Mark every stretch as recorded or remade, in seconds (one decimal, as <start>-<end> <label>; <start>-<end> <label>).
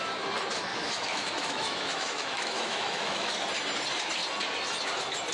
0.0-0.7 recorded; 0.7-3.3 remade; 3.3-5.3 recorded